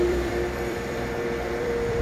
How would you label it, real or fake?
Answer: fake